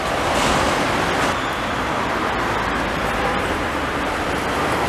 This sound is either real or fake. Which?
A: real